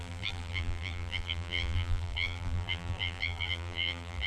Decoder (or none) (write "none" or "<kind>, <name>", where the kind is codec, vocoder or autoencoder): vocoder, BigVGAN v2